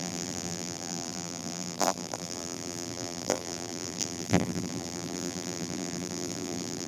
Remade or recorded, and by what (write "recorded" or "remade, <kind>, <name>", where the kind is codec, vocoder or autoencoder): remade, vocoder, BigVGAN v2